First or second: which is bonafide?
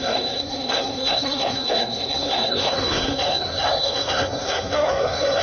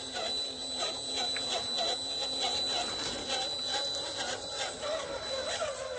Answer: second